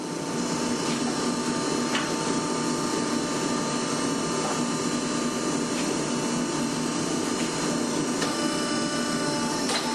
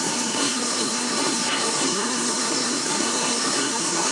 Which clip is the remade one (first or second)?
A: second